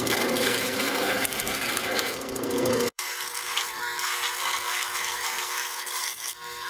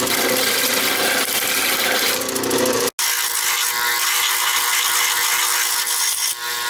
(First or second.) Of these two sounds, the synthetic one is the first